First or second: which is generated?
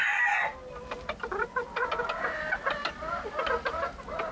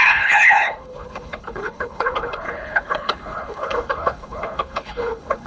second